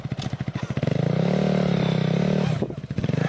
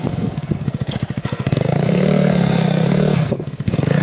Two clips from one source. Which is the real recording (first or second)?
first